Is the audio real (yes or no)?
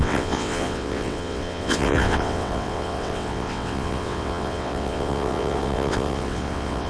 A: no